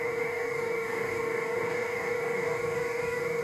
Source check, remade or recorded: remade